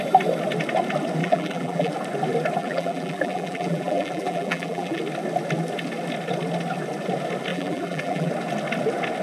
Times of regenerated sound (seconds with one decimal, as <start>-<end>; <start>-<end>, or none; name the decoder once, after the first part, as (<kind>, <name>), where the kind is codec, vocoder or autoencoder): 1.2-1.9 (vocoder, BigVGAN v2); 2.6-5.0; 7.5-8.3